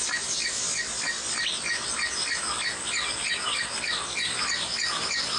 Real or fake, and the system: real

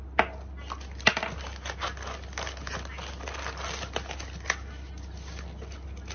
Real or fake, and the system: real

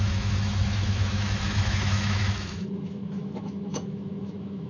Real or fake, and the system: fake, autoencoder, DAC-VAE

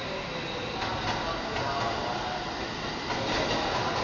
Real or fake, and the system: real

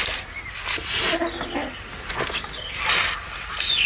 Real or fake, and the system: real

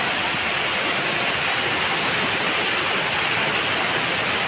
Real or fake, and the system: real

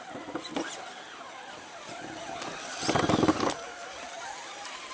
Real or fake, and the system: real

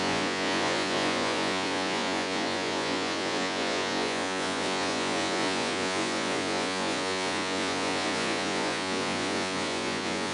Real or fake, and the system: fake, vocoder, Vocos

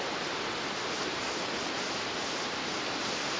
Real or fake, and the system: real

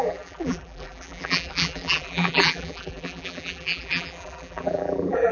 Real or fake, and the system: fake, vocoder, BigVGAN v2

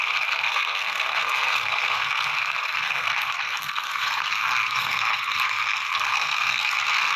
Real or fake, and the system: fake, codec, SNAC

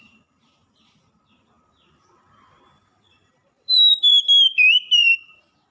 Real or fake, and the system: fake, vocoder, BigVGAN v2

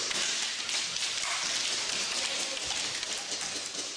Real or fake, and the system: real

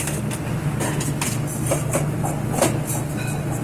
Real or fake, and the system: real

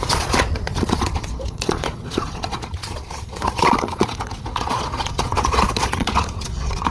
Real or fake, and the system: fake, vocoder, Vocos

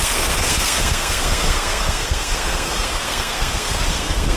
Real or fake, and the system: fake, codec, SNAC